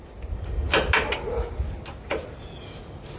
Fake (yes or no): no